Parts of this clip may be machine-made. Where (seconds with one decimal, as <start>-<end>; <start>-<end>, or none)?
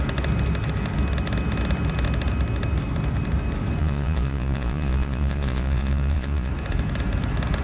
3.8-6.5